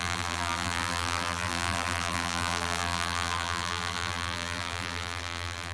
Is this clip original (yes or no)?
no